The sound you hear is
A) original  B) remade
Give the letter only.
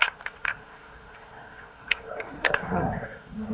B